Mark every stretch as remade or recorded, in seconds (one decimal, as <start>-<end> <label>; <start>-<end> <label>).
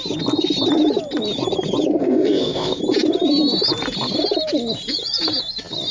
0.0-2.0 recorded; 2.0-2.8 remade; 2.8-5.9 recorded